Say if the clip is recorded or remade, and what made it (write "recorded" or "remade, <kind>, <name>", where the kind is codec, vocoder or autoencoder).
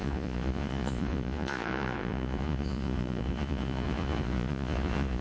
remade, vocoder, Vocos